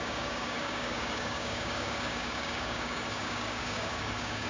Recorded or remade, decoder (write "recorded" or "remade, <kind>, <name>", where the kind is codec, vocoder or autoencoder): remade, codec, DAC